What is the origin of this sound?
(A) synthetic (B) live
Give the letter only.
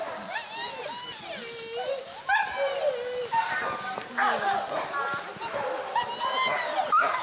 B